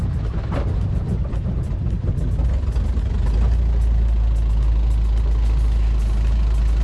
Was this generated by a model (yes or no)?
no